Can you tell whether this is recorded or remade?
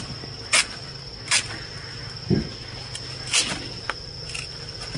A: recorded